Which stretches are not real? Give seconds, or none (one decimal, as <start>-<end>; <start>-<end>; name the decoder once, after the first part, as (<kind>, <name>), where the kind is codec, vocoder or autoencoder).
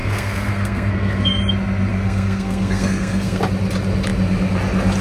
0.0-1.4 (codec, SNAC); 1.9-3.4